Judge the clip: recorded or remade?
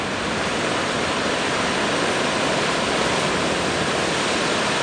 remade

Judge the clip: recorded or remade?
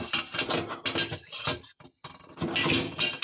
recorded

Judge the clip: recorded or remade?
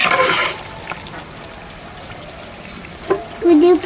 recorded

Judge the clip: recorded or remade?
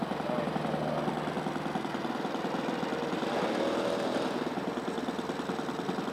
recorded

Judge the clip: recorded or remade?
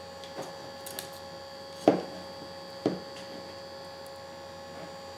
recorded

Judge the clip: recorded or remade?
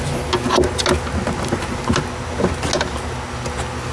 recorded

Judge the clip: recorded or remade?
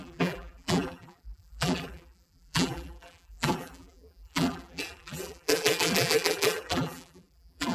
remade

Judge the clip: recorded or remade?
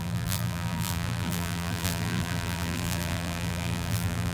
remade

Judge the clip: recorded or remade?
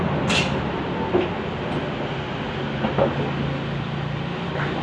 recorded